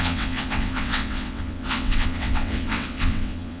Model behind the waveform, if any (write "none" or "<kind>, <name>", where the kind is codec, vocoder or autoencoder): vocoder, WaveNeXt